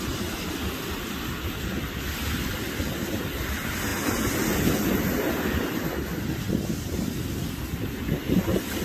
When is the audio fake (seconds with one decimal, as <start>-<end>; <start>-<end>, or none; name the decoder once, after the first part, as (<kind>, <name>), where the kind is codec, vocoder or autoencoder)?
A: none